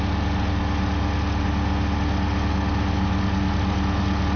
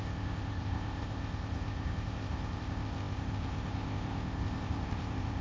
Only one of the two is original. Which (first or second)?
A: first